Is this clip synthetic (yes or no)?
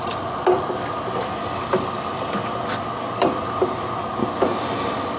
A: no